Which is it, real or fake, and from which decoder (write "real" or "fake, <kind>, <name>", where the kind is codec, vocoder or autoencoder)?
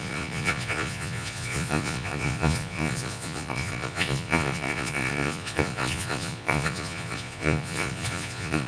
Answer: fake, vocoder, Vocos